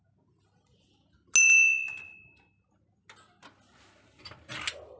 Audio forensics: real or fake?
real